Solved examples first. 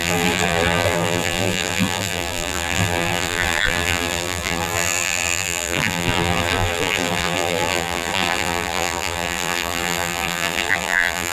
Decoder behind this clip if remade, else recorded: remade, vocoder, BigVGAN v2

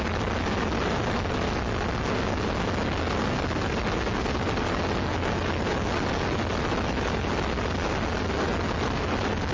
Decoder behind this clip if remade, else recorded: recorded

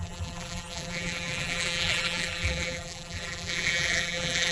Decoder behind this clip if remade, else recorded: remade, vocoder, BigVGAN v2